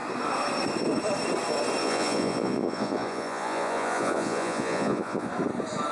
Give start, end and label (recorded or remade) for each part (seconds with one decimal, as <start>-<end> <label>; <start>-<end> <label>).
0.0-1.8 recorded; 1.8-5.3 remade; 5.3-5.9 recorded